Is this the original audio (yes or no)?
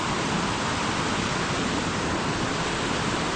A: no